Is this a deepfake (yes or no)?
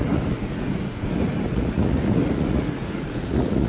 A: yes